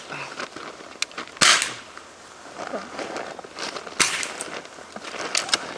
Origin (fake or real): real